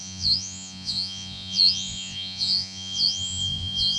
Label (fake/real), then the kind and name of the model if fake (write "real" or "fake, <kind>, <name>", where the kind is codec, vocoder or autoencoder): fake, vocoder, Vocos